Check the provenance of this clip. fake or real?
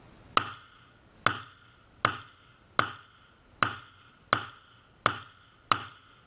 real